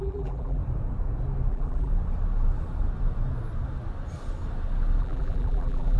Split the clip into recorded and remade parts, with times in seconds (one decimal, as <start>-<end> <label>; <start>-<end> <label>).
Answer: 0.0-0.6 remade; 0.6-1.5 recorded; 1.5-1.9 remade; 1.9-5.0 recorded; 5.0-6.0 remade